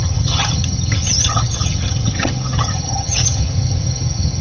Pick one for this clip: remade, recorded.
remade